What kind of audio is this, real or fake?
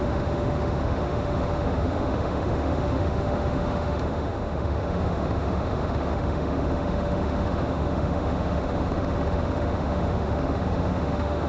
fake